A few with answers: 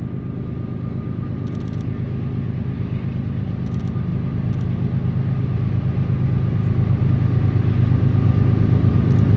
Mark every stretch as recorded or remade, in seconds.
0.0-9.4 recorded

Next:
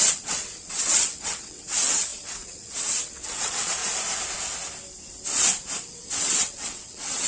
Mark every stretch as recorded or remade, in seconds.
0.0-3.8 remade; 3.8-5.9 recorded; 5.9-7.3 remade

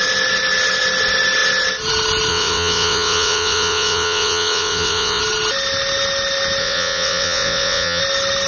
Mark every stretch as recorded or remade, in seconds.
0.0-2.3 recorded; 2.3-5.2 remade; 5.2-6.6 recorded; 6.6-8.0 remade; 8.0-8.5 recorded